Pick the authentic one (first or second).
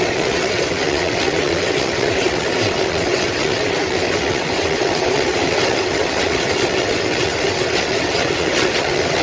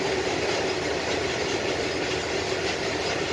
second